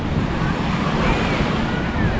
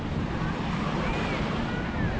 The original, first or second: second